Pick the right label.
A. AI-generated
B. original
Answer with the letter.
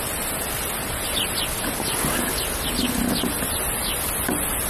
B